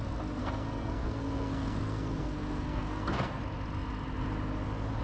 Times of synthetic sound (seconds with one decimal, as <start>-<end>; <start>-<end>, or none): 0.4-3.4